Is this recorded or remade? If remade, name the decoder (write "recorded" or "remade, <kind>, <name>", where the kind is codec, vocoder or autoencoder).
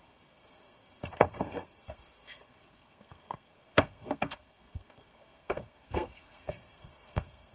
remade, codec, SNAC